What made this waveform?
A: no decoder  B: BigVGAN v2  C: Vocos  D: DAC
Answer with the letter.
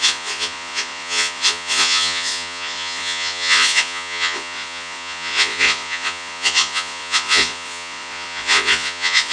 C